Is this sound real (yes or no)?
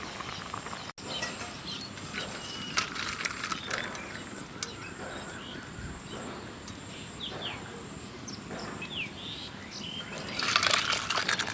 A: yes